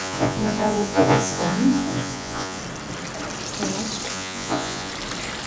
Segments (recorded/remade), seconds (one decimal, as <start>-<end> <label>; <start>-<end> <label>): 0.0-2.6 remade; 2.6-4.1 recorded; 4.1-4.9 remade; 4.9-5.5 recorded